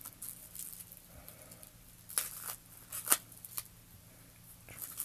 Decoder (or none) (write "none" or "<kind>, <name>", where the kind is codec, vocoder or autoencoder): none